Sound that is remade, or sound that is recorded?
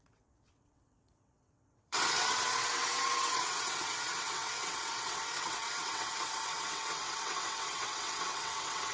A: remade